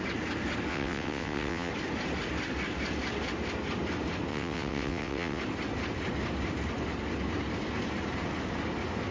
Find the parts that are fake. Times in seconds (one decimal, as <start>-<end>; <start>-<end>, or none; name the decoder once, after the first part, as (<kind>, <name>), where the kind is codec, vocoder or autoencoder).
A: 0.7-1.7 (vocoder, WaveNeXt); 4.3-5.4